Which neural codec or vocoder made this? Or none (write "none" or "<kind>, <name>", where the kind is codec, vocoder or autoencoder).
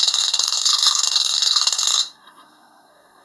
codec, SNAC